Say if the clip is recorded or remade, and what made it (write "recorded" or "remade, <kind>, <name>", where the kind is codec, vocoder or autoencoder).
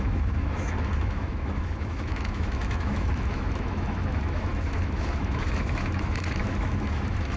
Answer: remade, autoencoder, DAC-VAE